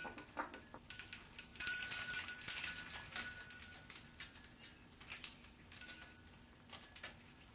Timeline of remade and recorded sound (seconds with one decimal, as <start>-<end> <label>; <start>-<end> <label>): 0.0-1.5 recorded; 1.5-3.1 remade; 3.1-7.5 recorded